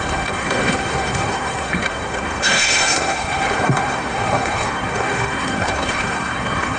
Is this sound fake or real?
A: fake